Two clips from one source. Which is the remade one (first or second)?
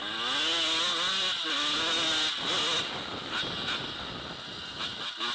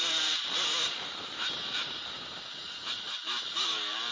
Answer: second